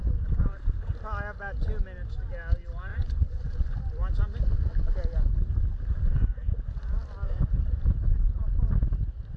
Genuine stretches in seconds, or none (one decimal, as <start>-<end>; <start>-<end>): 0.0-2.9; 3.8-9.4